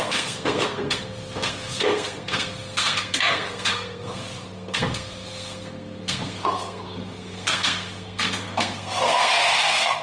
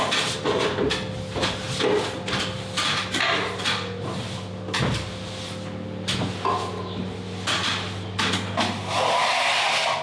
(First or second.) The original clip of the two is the second